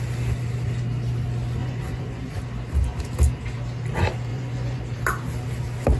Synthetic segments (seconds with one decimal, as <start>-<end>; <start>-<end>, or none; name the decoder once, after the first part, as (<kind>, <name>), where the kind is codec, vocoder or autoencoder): 1.6-2.4 (vocoder, Vocos); 4.3-4.8

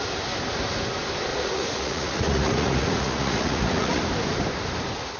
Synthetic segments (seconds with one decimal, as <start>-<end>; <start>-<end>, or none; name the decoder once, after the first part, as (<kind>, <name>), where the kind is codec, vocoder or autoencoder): 1.3-4.0 (vocoder, Vocos)

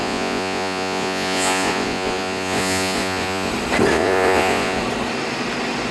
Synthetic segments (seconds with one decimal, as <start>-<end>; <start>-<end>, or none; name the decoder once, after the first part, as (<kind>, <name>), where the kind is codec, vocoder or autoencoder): 0.0-3.5 (vocoder, Vocos); 3.9-4.8

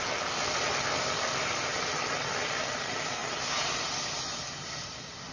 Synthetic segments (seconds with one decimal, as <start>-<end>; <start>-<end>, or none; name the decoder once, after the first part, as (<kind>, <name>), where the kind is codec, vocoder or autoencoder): none

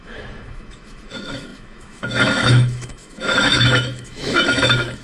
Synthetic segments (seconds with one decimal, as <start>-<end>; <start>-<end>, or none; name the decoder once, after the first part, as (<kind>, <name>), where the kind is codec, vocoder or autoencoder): 0.0-5.0 (autoencoder, DAC-VAE)

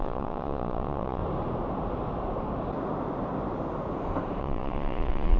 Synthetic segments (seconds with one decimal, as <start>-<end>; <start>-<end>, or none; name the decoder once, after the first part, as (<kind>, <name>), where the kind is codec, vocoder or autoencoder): 0.0-1.2 (vocoder, Vocos); 4.4-5.4